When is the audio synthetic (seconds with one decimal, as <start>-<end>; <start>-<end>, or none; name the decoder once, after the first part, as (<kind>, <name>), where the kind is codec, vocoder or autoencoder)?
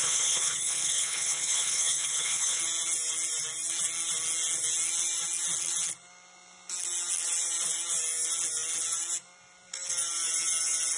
0.0-2.6 (codec, HILCodec)